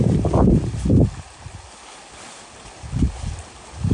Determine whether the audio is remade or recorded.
recorded